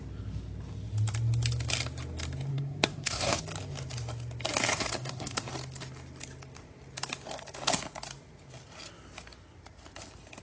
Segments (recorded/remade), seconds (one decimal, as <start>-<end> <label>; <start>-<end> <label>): 0.0-2.5 recorded; 2.5-3.4 remade; 3.4-4.7 recorded; 4.7-5.5 remade; 5.5-10.4 recorded